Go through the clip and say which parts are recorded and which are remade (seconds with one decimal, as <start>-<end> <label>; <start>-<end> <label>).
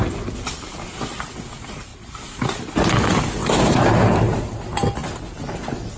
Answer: 0.0-1.9 recorded; 1.9-2.6 remade; 2.6-3.4 recorded; 3.4-4.4 remade; 4.4-6.0 recorded